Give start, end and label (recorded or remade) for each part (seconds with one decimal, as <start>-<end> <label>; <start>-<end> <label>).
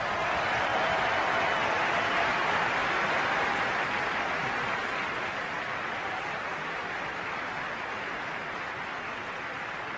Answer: 0.0-10.0 recorded